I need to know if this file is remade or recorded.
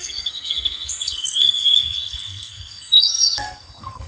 remade